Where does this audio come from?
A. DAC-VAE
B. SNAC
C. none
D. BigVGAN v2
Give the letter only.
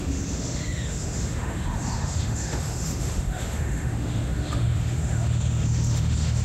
A